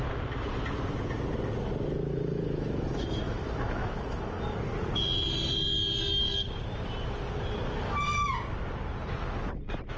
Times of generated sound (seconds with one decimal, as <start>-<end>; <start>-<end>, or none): 2.1-4.7